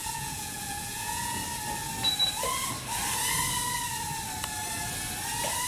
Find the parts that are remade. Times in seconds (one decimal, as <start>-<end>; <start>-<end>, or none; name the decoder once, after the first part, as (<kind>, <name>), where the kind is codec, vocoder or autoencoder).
0.0-1.4 (vocoder, Vocos)